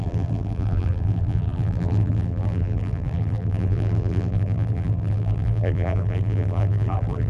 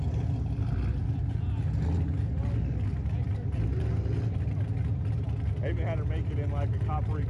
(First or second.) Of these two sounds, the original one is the second